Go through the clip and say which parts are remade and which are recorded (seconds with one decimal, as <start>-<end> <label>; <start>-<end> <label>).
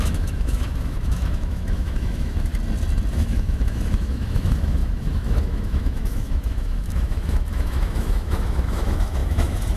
0.0-2.5 remade; 2.5-3.1 recorded; 3.1-9.8 remade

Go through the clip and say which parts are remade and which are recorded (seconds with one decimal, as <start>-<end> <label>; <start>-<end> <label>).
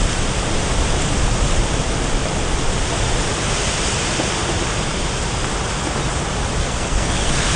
0.0-6.6 recorded; 6.6-7.6 remade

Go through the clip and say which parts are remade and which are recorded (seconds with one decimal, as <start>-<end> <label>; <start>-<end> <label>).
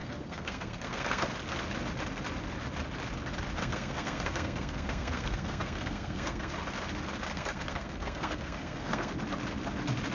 0.0-1.3 remade; 1.3-3.6 recorded; 3.6-6.5 remade; 6.5-7.3 recorded; 7.3-9.1 remade; 9.1-10.1 recorded